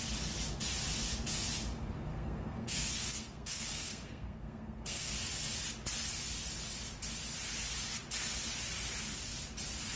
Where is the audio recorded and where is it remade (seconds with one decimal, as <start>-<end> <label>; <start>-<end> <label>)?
0.0-2.1 recorded; 2.1-5.1 remade; 5.1-10.0 recorded